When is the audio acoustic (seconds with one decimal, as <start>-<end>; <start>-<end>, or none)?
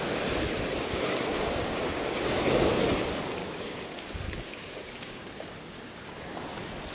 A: 0.0-1.3; 2.4-3.4; 6.3-6.9